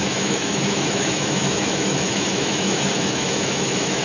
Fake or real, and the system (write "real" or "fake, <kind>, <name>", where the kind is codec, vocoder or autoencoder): fake, autoencoder, DAC-VAE